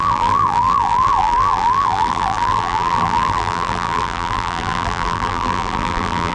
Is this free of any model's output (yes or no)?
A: no